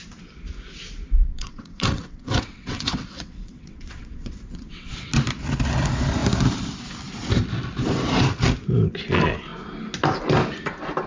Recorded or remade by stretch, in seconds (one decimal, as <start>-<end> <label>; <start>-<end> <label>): 0.0-1.3 recorded; 1.3-5.1 remade; 5.1-11.1 recorded